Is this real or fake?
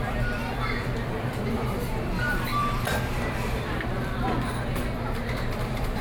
fake